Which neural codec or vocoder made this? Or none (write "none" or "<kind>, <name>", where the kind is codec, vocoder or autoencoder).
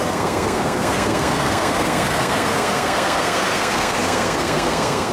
codec, SNAC